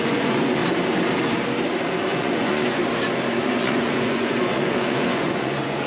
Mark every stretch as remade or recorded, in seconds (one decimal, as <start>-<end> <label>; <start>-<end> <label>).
0.0-0.6 remade; 0.6-2.0 recorded; 2.0-2.8 remade; 2.8-3.4 recorded; 3.4-5.9 remade